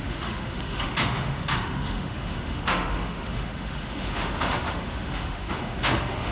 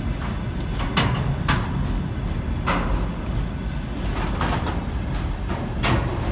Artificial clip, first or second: first